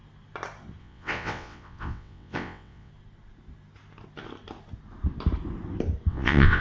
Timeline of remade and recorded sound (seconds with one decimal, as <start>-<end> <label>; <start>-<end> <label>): 0.0-0.8 recorded; 0.8-2.9 remade; 2.9-6.1 recorded; 6.1-6.6 remade